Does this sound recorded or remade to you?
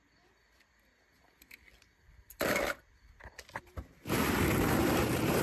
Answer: recorded